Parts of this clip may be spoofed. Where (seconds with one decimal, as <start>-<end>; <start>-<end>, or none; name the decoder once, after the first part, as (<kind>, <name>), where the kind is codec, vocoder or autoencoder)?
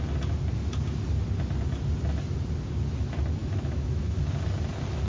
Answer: 3.4-4.2 (autoencoder, DAC-VAE)